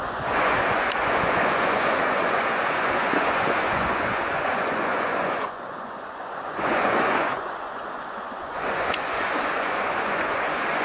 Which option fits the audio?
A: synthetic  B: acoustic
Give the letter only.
A